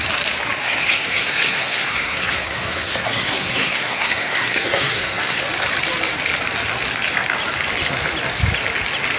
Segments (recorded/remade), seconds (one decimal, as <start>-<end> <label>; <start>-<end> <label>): 0.0-0.6 recorded; 0.6-5.4 remade; 5.4-9.2 recorded

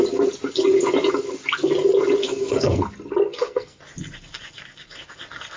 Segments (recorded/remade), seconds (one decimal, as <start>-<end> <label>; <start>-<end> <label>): 0.0-2.2 recorded; 2.2-2.9 remade; 2.9-3.3 recorded; 3.3-3.8 remade; 3.8-5.6 recorded

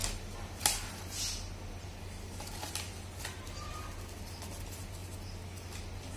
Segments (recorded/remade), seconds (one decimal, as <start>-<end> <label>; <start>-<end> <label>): 0.0-6.2 recorded

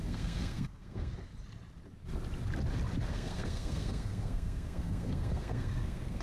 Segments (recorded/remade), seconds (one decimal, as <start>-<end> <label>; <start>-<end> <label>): 0.0-1.1 remade; 1.1-3.1 recorded; 3.1-6.2 remade

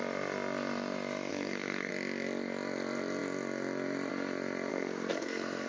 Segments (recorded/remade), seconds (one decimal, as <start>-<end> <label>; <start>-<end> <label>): 0.0-1.3 recorded; 1.3-1.9 remade; 1.9-4.7 recorded; 4.7-5.7 remade